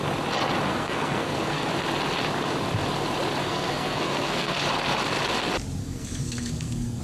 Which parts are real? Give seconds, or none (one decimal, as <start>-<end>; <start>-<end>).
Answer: 0.0-0.7; 1.7-3.4; 4.6-5.8